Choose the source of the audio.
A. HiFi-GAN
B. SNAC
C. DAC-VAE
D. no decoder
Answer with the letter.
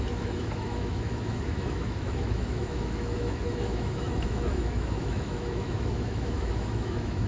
C